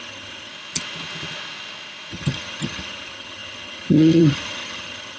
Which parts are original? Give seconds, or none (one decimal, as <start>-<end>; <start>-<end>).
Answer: 0.5-2.1